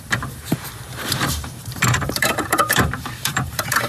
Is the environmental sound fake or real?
fake